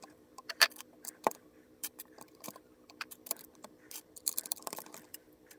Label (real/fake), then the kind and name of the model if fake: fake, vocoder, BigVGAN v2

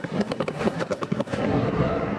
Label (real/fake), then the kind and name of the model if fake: fake, codec, SNAC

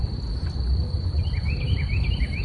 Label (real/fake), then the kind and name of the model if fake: fake, vocoder, BigVGAN v2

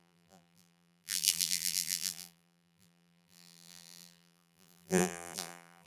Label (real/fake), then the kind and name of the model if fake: fake, vocoder, BigVGAN v2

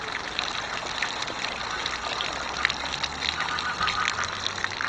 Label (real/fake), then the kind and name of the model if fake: real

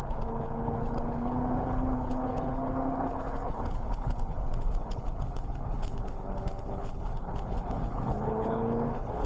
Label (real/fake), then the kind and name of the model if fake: fake, codec, HILCodec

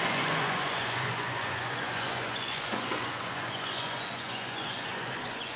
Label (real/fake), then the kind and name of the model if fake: fake, vocoder, Vocos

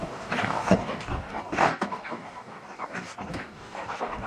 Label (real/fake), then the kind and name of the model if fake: fake, codec, DAC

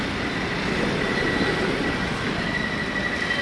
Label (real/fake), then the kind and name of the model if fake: real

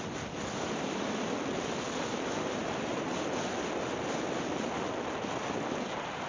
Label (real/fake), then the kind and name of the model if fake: real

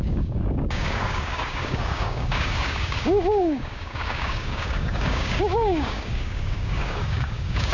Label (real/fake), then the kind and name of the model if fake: fake, codec, DAC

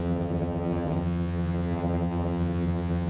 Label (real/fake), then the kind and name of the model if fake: fake, vocoder, HiFi-GAN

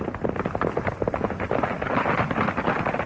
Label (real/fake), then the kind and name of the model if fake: real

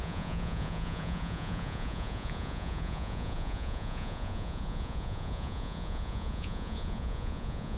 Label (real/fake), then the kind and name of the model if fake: fake, vocoder, Vocos